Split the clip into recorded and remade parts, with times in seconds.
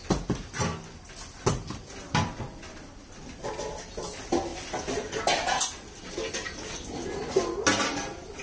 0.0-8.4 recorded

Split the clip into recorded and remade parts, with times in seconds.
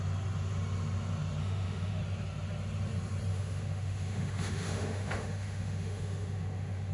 0.0-1.4 recorded; 1.4-2.0 remade; 2.0-3.3 recorded; 3.3-6.9 remade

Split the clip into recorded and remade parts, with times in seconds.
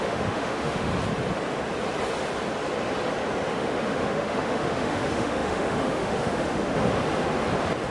0.0-0.9 remade; 0.9-3.5 recorded; 3.5-6.7 remade; 6.7-7.9 recorded